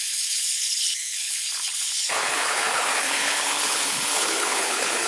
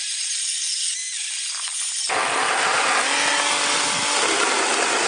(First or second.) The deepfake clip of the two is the first